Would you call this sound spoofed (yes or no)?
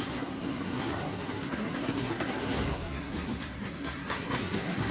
yes